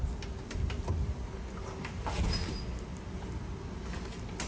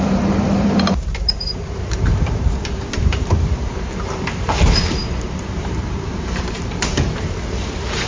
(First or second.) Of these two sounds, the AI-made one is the second